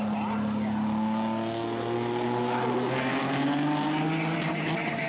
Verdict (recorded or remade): recorded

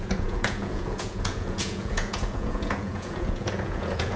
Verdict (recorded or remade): remade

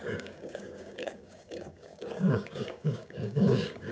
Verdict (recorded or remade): remade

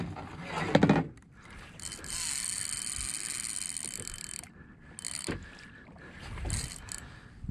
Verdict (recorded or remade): recorded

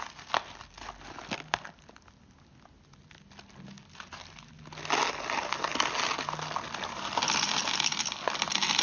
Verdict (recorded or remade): recorded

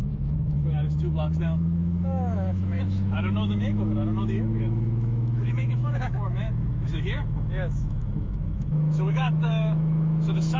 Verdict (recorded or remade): remade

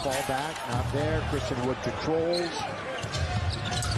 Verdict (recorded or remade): recorded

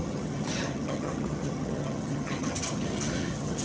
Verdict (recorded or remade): remade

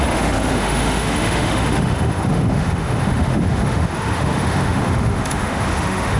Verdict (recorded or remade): remade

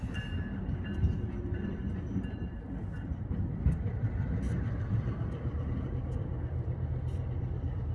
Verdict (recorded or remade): remade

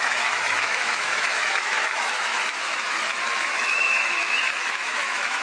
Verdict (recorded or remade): remade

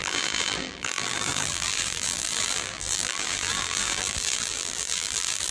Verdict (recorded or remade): remade